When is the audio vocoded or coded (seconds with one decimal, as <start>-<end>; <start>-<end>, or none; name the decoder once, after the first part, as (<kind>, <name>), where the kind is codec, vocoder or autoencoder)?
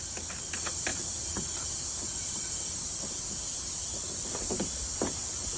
none